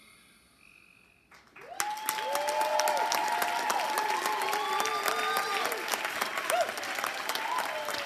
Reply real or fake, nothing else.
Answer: real